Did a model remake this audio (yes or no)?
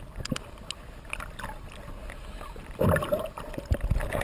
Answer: no